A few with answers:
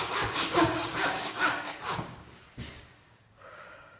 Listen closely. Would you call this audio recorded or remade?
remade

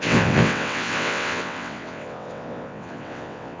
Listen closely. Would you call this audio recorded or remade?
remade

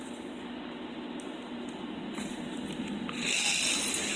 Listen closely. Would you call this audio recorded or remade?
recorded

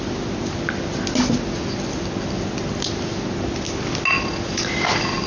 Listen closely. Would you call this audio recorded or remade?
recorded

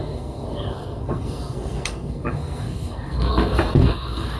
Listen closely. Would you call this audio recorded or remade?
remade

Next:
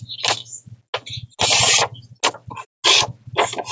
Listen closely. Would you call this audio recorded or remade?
recorded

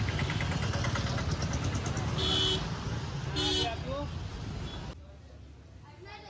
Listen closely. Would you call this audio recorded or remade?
recorded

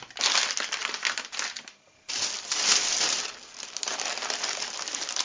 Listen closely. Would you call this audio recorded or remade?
recorded